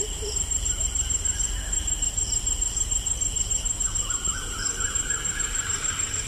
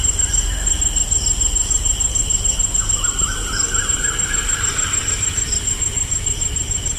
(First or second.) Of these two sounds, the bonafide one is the second